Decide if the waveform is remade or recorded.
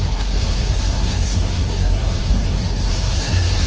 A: remade